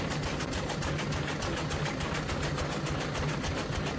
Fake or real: real